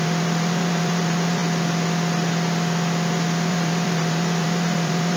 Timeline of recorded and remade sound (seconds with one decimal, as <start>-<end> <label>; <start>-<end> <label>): 0.0-1.4 remade; 1.4-3.5 recorded; 3.5-5.2 remade